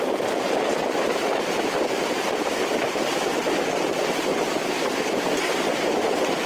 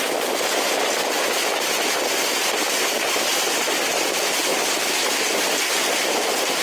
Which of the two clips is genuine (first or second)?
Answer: second